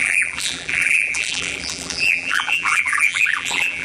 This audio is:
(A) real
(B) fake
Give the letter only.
B